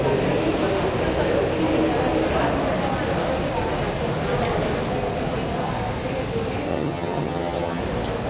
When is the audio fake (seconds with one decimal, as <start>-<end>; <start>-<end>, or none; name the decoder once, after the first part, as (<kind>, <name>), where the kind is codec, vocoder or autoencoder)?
6.7-7.8 (vocoder, HiFi-GAN)